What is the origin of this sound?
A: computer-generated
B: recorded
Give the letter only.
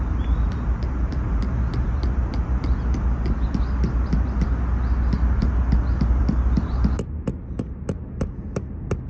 B